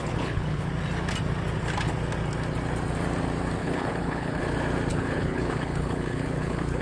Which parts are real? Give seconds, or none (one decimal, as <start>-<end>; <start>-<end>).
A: 0.7-3.6; 4.4-4.9